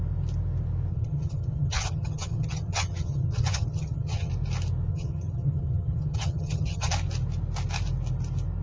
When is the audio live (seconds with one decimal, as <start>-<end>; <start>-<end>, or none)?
0.0-0.9; 4.3-4.9; 6.9-8.6